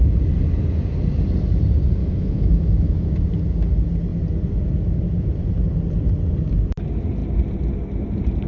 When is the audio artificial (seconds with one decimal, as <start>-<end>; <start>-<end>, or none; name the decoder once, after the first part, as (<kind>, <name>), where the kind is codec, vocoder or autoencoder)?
2.0-3.2 (autoencoder, DAC-VAE)

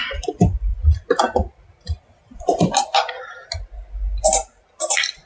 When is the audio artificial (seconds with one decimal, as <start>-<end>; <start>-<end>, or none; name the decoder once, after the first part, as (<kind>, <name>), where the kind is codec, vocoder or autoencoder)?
none